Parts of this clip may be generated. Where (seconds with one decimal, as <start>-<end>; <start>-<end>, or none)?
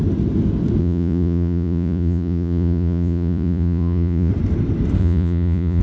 0.8-4.3; 5.0-5.8